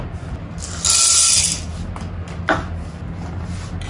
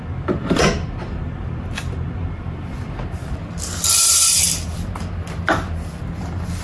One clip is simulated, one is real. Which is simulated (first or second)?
second